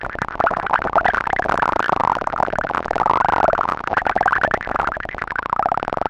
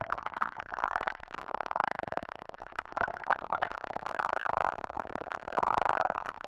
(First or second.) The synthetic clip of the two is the second